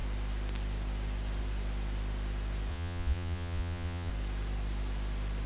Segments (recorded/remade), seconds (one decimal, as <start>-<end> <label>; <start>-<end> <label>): 0.0-2.7 recorded; 2.7-4.1 remade; 4.1-5.5 recorded

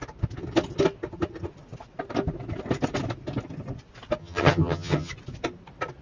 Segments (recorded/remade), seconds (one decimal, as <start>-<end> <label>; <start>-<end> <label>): 0.0-4.2 recorded; 4.2-5.1 remade; 5.1-6.0 recorded

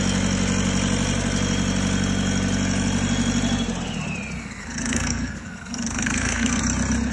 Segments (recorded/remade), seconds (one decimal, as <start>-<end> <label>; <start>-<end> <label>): 0.0-4.4 recorded; 4.4-6.6 remade; 6.6-7.1 recorded